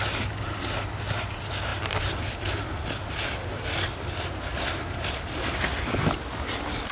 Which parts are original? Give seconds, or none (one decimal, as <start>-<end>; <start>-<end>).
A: 0.0-1.7; 4.1-4.5; 6.0-6.9